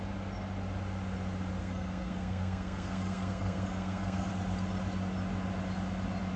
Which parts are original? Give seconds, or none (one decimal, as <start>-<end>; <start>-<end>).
0.0-1.6; 4.3-6.4

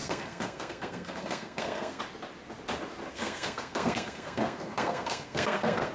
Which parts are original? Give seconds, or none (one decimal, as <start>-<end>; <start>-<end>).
2.0-3.1

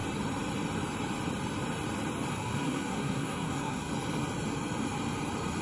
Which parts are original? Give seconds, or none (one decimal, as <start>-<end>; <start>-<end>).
0.0-2.3; 3.9-5.6

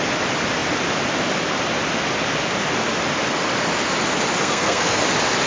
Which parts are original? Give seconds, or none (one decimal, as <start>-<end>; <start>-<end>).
0.0-4.4; 5.0-5.5

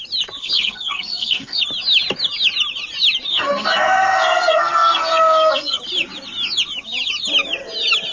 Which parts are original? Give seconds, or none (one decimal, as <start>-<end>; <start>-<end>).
0.0-0.4; 1.6-3.3; 5.8-8.1

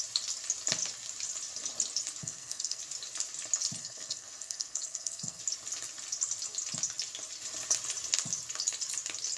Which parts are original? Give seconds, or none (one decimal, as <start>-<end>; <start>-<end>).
0.0-2.2; 2.8-3.8; 5.4-9.4

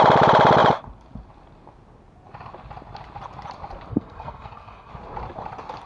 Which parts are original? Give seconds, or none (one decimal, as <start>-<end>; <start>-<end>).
0.0-3.9; 4.9-5.9